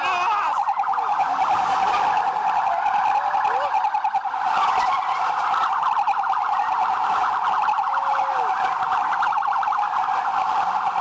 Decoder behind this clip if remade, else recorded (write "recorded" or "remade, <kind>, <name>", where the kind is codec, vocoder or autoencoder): recorded